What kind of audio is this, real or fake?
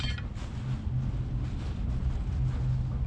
real